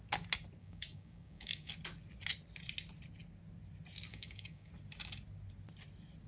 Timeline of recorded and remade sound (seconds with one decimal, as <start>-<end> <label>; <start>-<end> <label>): 0.0-0.6 recorded; 0.6-1.7 remade; 1.7-4.1 recorded; 4.1-4.7 remade; 4.7-6.3 recorded